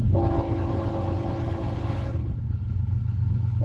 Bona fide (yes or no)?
no